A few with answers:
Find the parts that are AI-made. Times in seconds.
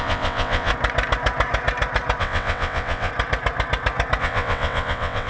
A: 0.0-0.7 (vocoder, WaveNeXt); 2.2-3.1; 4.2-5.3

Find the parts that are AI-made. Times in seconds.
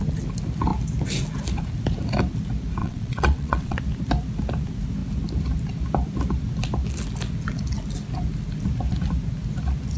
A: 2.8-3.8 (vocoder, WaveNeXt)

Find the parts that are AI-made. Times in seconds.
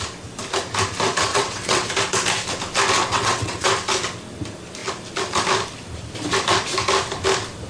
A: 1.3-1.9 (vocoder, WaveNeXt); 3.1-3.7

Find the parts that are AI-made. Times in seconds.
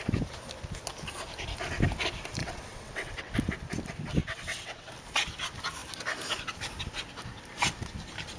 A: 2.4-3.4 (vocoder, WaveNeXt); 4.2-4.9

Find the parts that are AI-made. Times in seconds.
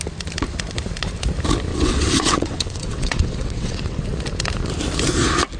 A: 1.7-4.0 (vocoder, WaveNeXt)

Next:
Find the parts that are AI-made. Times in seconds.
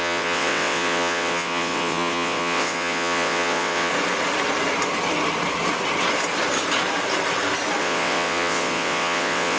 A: 0.0-3.9 (vocoder, WaveNeXt); 7.8-9.6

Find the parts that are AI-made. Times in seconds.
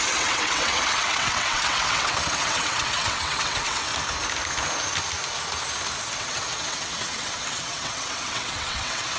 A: 0.0-3.9 (vocoder, WaveNeXt); 6.2-9.2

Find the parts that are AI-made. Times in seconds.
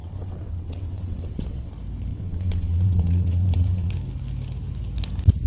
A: 0.0-1.7 (vocoder, WaveNeXt); 2.1-3.9